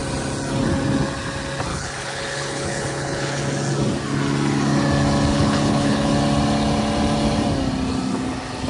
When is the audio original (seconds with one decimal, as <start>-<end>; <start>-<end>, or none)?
0.0-1.7; 3.4-5.3; 6.1-8.7